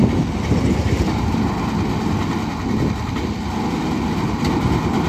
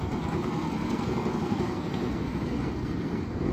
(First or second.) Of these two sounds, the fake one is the second